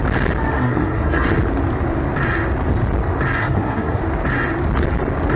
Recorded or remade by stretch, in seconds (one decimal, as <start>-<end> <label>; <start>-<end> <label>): 0.0-0.5 recorded; 0.5-1.3 remade; 1.3-3.4 recorded; 3.4-4.0 remade; 4.0-5.4 recorded